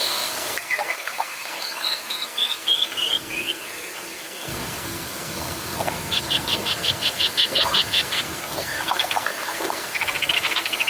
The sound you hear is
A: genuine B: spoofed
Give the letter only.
B